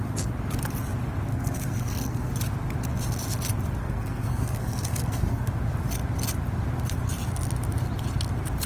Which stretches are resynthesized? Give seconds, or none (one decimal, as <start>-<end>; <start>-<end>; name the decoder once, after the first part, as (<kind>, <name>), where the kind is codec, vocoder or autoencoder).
1.3-2.3 (codec, SNAC); 3.8-5.5